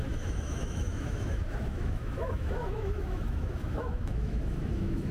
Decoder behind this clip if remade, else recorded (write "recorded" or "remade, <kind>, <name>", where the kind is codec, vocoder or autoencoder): remade, autoencoder, DAC-VAE